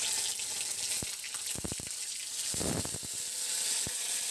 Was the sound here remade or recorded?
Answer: recorded